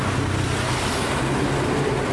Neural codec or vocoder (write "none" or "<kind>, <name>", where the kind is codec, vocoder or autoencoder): none